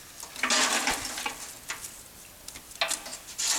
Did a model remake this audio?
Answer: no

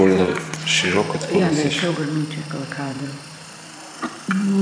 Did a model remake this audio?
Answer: yes